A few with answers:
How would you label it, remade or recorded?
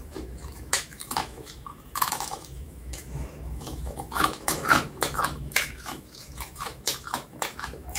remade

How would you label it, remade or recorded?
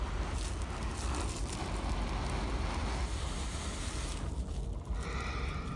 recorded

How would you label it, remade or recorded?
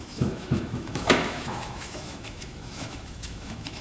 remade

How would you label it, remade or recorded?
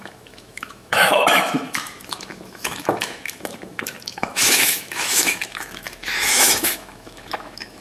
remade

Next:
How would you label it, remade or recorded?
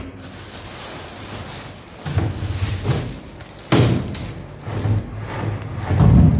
recorded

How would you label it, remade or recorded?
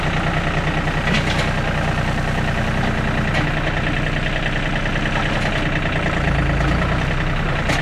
recorded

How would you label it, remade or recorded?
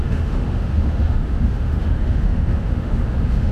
remade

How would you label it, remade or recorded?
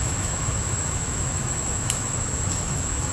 remade